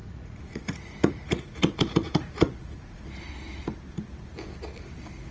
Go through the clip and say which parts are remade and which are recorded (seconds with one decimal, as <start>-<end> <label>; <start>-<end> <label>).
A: 0.0-3.0 remade; 3.0-5.3 recorded

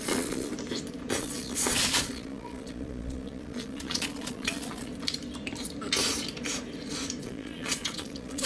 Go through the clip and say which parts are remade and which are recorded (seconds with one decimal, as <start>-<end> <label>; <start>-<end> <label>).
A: 0.0-0.5 remade; 0.5-1.2 recorded; 1.2-4.9 remade; 4.9-7.2 recorded; 7.2-8.5 remade

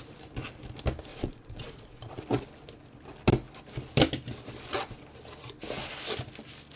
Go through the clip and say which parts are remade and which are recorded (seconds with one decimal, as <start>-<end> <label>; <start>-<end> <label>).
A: 0.0-1.1 recorded; 1.1-2.2 remade; 2.2-6.8 recorded

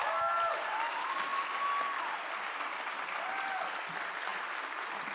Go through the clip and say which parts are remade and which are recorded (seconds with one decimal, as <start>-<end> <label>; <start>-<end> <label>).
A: 0.0-5.1 recorded

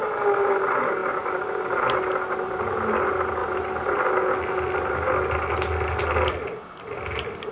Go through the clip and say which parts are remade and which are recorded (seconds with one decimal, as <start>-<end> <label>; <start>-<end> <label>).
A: 0.0-7.5 recorded

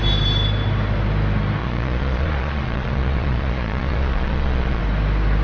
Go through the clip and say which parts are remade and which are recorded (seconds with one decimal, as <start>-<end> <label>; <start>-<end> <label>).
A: 0.0-1.6 recorded; 1.6-4.8 remade; 4.8-5.4 recorded

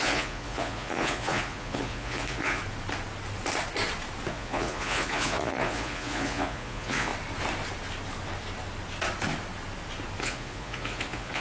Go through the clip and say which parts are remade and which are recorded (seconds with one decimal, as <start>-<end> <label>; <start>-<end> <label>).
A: 0.0-2.6 remade; 2.6-4.3 recorded; 4.3-7.1 remade; 7.1-10.2 recorded; 10.2-11.4 remade

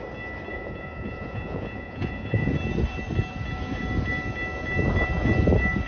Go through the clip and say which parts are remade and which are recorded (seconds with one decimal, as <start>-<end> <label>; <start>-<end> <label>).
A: 0.0-0.5 recorded; 0.5-2.5 remade; 2.5-5.9 recorded